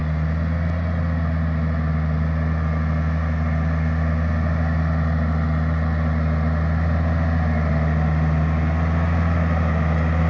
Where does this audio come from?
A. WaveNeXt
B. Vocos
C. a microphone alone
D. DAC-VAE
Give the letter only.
C